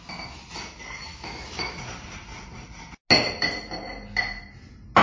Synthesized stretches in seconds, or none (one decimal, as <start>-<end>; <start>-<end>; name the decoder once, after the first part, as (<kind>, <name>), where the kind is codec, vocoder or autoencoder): 1.1-1.8 (autoencoder, DAC-VAE)